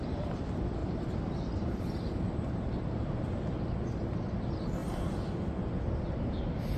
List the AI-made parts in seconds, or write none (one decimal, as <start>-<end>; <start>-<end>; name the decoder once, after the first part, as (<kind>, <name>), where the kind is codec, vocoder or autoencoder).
0.8-3.6 (vocoder, BigVGAN v2)